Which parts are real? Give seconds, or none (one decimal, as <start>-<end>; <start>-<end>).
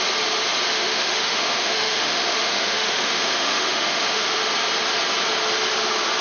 0.0-0.7; 4.4-6.2